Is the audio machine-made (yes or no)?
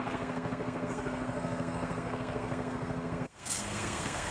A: yes